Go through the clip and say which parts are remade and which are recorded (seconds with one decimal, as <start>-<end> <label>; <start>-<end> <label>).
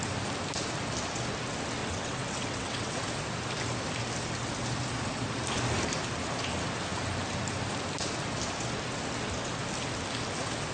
0.0-1.8 recorded; 1.8-2.9 remade; 2.9-10.7 recorded